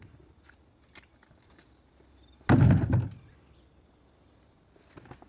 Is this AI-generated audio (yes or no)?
no